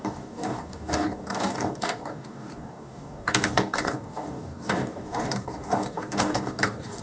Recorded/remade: remade